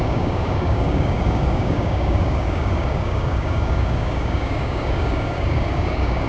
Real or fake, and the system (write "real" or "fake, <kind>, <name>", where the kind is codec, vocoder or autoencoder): fake, codec, DAC